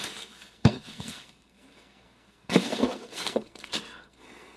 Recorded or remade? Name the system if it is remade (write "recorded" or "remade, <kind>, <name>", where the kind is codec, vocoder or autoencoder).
remade, codec, SNAC